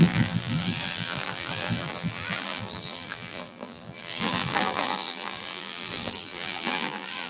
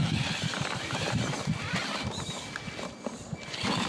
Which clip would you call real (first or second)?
second